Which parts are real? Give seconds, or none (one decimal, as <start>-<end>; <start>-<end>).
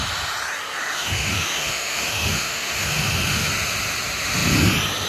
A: 0.0-0.8; 3.5-5.1